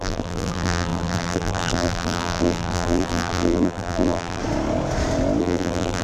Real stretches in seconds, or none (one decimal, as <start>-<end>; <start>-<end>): 4.4-5.4